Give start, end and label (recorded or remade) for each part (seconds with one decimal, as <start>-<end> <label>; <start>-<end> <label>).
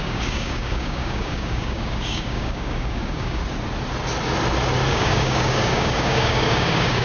0.0-3.4 remade; 3.4-4.9 recorded; 4.9-7.0 remade